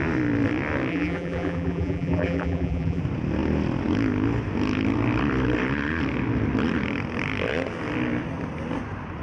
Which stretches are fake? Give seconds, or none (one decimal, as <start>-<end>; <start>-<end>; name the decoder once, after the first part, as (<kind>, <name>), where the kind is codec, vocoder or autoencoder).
0.9-3.0 (vocoder, BigVGAN v2)